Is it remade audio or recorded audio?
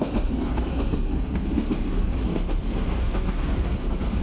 remade